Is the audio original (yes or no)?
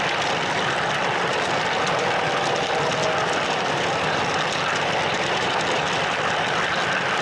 yes